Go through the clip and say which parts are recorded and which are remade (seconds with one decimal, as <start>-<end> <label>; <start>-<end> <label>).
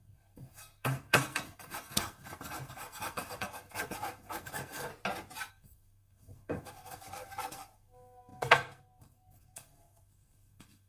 0.0-4.9 remade; 4.9-5.5 recorded; 5.5-10.9 remade